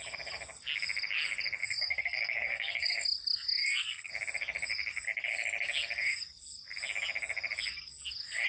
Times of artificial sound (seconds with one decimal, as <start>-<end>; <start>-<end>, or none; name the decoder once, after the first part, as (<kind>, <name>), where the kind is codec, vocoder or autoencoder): 1.6-3.0 (codec, SNAC); 3.6-4.1